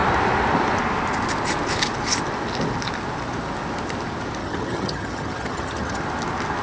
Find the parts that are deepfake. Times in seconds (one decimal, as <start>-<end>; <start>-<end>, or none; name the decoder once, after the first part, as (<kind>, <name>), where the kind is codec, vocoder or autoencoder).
4.4-6.0 (vocoder, HiFi-GAN)